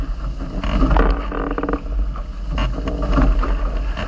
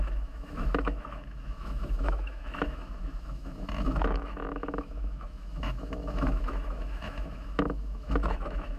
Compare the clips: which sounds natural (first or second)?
first